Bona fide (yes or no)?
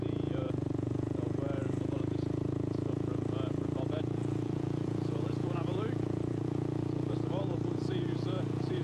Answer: no